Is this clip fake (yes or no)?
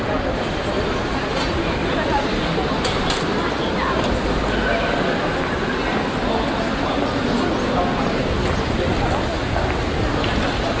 no